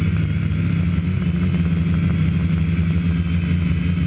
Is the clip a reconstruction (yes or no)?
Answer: no